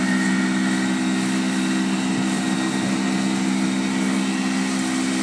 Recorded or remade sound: recorded